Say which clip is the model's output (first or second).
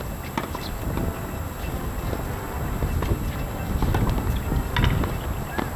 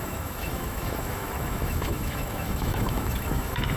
second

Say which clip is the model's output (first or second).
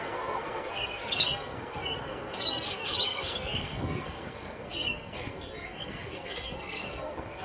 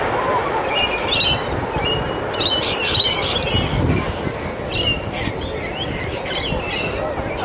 first